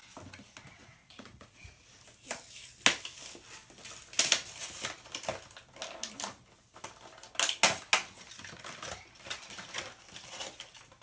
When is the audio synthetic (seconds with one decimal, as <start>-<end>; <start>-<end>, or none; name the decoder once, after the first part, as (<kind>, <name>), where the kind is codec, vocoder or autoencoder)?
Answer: 0.8-1.9 (vocoder, Vocos)